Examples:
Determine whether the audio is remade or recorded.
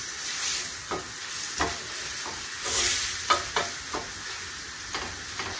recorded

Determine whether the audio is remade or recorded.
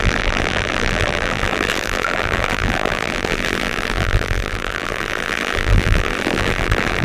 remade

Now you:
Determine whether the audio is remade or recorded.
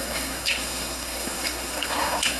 remade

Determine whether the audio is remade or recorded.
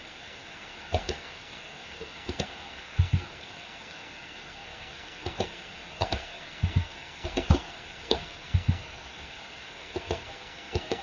remade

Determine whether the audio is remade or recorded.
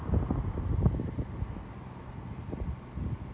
recorded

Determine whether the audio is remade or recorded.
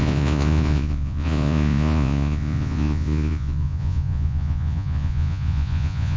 remade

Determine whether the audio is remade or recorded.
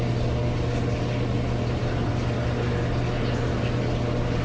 recorded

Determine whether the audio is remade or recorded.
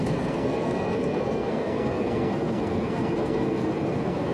remade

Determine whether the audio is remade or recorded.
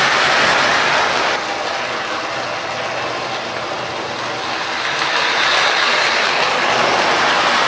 recorded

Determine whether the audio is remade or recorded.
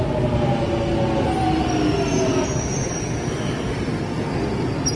recorded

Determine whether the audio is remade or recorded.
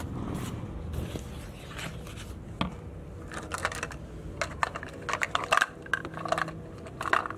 recorded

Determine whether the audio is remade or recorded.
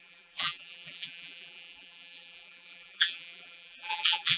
remade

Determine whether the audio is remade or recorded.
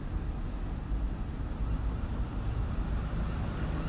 recorded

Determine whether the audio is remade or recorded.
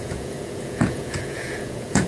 remade